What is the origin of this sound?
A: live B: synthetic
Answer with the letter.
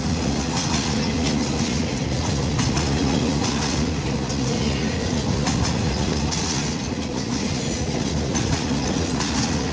B